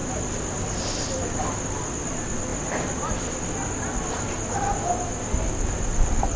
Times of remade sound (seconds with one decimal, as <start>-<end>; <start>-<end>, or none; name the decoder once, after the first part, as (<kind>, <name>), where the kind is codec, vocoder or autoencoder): none